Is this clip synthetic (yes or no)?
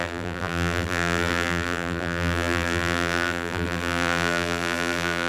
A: yes